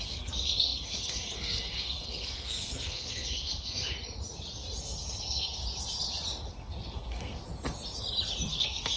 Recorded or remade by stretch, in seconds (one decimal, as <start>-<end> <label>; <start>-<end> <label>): 0.0-3.8 remade; 3.8-4.8 recorded; 4.8-5.6 remade; 5.6-6.5 recorded; 6.5-7.4 remade; 7.4-8.5 recorded; 8.5-9.0 remade